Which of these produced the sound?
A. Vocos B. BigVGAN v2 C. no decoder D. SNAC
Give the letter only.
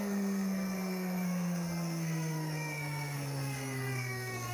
D